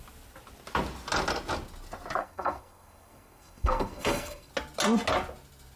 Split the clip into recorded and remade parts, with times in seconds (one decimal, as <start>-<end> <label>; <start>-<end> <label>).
0.0-2.2 recorded; 2.2-4.5 remade; 4.5-5.8 recorded